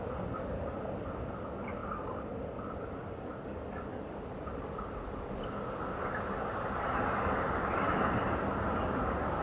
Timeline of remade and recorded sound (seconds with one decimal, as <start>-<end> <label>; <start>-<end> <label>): 0.0-9.4 recorded